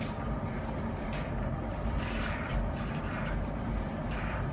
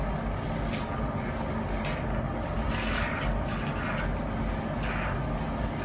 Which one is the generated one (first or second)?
first